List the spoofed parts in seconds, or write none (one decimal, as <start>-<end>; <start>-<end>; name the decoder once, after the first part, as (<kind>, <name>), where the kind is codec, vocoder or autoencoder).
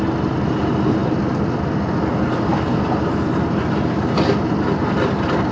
none